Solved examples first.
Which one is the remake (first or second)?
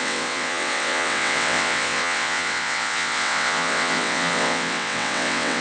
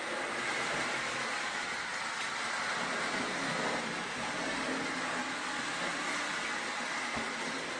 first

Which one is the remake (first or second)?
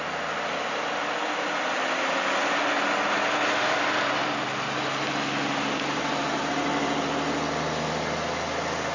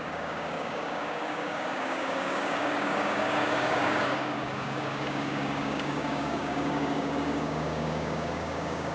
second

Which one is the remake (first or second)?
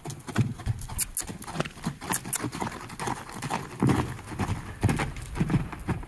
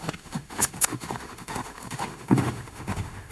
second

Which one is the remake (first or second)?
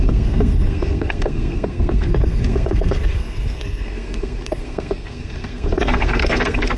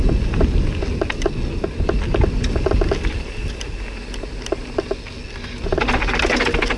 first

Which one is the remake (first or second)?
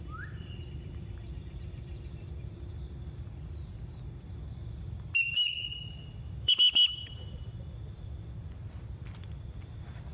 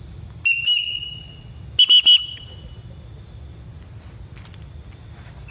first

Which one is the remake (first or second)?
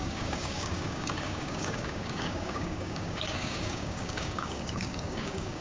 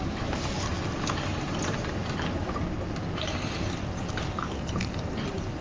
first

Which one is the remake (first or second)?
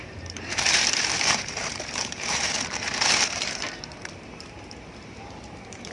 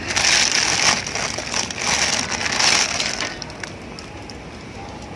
first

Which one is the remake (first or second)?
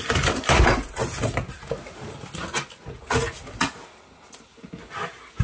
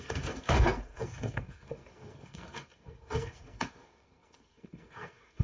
second